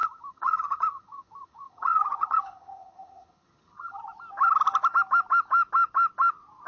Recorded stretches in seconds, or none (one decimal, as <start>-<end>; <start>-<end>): 4.0-6.7